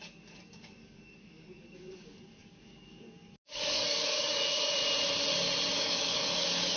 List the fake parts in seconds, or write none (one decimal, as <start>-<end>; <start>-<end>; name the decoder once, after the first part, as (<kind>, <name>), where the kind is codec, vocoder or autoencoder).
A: 0.0-4.8 (codec, DAC); 5.7-6.8